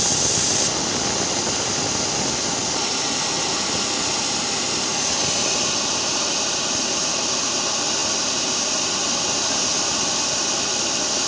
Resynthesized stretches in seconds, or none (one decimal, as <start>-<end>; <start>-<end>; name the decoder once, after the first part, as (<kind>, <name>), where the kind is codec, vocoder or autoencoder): none